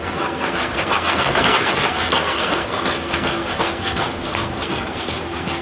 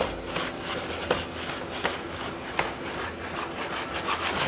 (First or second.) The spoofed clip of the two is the first